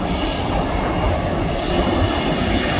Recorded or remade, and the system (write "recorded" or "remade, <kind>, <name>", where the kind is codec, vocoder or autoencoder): recorded